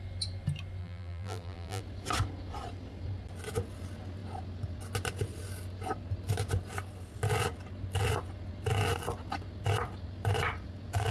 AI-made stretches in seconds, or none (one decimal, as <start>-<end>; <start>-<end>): 0.8-1.8